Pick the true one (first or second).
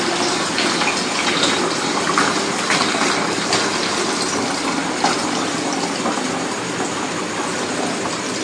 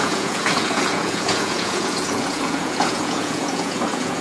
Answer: first